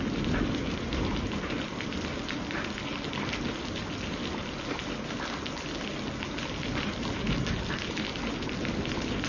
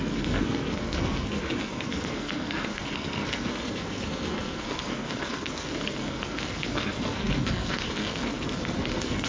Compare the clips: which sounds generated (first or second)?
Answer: second